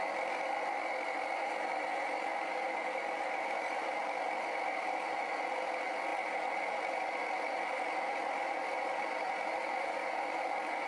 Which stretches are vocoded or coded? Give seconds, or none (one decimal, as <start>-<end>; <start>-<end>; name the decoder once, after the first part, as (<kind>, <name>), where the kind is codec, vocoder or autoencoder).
none